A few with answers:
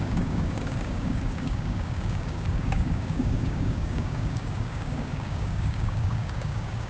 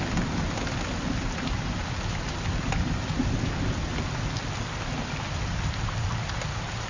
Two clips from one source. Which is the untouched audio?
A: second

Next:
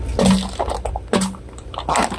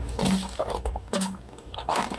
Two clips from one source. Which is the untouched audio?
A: first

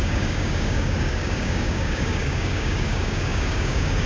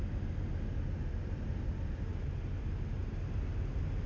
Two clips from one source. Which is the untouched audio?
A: second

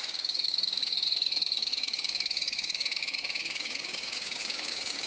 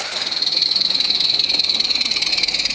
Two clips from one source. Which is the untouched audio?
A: second